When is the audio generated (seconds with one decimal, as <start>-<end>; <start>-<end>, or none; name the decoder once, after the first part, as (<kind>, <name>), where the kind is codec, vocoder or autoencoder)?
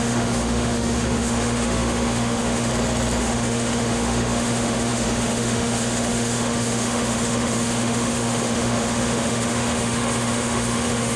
0.0-2.7 (autoencoder, DAC-VAE); 3.2-11.2